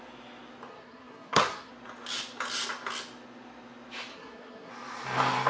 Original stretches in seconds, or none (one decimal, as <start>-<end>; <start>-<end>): 0.0-0.7; 1.7-4.1; 4.7-5.5